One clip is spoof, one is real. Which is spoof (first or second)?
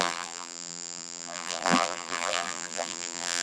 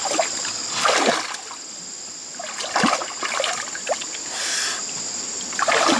first